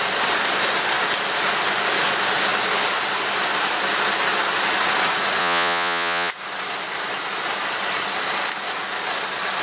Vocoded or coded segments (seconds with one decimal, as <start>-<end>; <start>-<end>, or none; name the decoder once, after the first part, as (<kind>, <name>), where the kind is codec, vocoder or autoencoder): 5.4-6.3 (vocoder, Vocos)